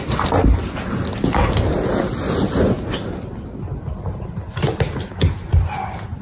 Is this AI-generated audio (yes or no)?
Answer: no